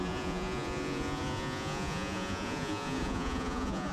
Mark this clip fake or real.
fake